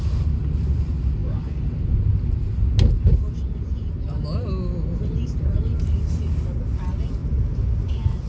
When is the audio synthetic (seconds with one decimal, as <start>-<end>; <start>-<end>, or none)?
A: none